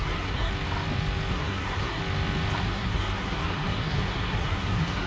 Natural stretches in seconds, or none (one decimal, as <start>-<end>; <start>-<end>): 0.5-1.3; 2.0-2.6